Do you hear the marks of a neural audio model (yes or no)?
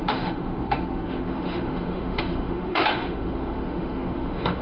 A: yes